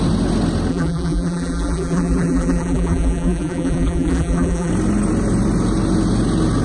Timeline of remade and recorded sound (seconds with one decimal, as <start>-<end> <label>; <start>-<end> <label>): 0.0-0.7 recorded; 0.7-4.7 remade; 4.7-6.6 recorded